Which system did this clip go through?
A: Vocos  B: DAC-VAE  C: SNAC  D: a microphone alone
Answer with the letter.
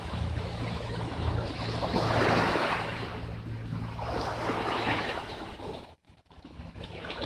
B